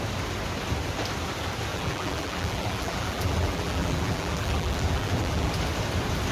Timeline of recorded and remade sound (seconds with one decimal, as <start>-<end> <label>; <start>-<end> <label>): 0.0-1.7 recorded; 1.7-5.5 remade; 5.5-6.3 recorded